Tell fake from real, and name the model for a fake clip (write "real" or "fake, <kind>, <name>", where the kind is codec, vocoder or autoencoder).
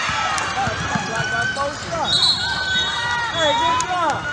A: real